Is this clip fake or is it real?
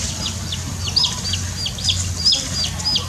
real